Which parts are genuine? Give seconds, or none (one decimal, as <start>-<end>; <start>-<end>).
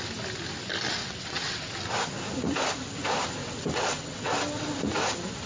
0.0-1.0; 1.7-3.4; 4.3-5.5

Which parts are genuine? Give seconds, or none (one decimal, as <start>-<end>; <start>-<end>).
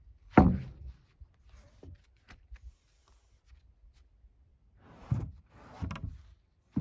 0.0-4.5; 5.5-6.8